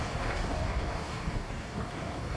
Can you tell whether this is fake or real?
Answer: fake